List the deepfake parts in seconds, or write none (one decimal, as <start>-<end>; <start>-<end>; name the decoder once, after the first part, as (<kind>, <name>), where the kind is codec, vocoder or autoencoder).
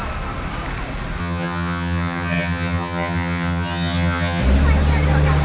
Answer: 1.2-4.4 (vocoder, HiFi-GAN)